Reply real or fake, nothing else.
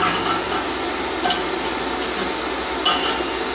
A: real